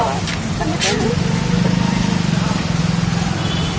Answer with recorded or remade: recorded